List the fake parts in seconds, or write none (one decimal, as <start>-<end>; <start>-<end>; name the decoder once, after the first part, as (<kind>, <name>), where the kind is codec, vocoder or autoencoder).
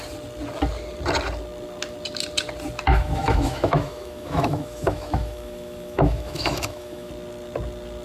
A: 2.9-7.1 (autoencoder, DAC-VAE)